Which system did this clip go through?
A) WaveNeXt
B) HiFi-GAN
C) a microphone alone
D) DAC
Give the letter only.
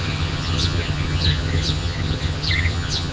B